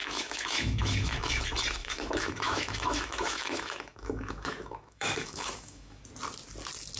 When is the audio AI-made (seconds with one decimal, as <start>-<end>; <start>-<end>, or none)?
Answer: 0.0-1.4; 1.8-6.0